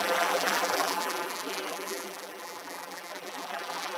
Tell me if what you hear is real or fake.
fake